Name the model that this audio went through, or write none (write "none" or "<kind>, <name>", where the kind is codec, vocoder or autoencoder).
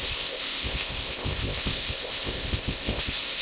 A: codec, ZipCodec